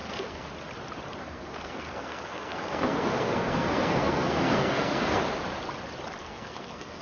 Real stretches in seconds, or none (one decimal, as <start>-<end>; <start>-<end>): 0.5-1.2; 5.2-6.2